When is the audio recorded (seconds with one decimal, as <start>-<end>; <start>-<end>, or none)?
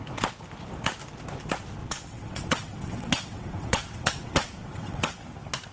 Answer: 0.0-1.8; 5.2-5.7